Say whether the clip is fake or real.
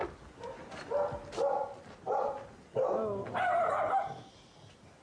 real